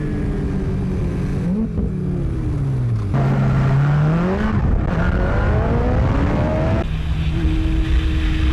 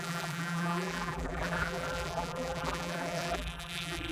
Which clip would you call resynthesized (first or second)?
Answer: second